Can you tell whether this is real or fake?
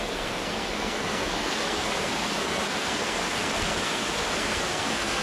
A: fake